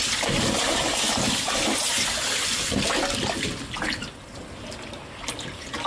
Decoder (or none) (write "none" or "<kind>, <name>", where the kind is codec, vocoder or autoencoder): none